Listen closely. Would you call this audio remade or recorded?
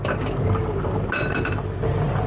recorded